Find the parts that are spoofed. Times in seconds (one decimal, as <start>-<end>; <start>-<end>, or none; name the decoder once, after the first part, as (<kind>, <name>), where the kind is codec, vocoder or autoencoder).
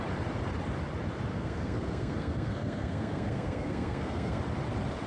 1.3-4.4 (codec, SNAC)